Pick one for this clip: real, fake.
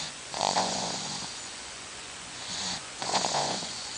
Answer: fake